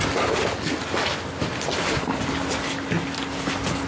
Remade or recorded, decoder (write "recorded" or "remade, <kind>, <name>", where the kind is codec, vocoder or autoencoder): recorded